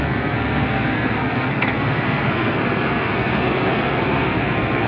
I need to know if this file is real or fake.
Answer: fake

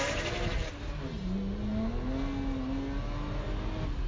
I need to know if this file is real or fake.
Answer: real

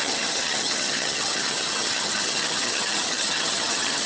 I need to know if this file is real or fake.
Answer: fake